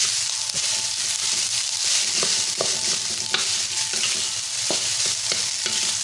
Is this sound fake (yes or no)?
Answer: no